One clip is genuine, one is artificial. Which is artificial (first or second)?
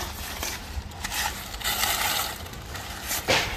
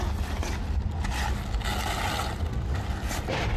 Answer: first